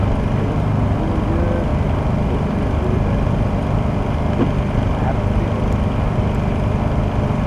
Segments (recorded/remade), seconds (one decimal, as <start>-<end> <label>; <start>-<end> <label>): 0.0-7.5 recorded